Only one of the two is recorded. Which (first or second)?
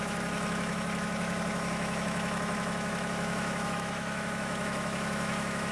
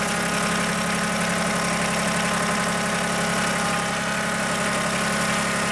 second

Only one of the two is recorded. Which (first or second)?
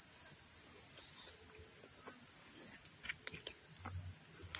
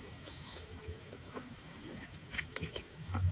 first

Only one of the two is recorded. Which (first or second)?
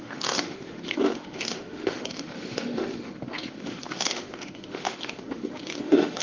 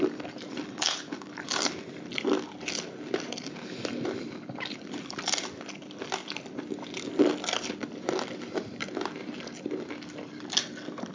second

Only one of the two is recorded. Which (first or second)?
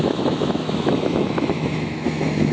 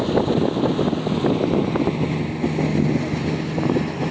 second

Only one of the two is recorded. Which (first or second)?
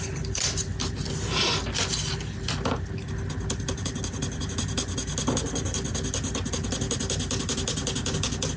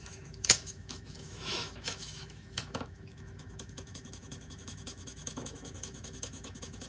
first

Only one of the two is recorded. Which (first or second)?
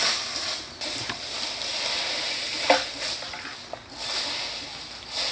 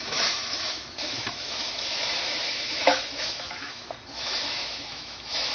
first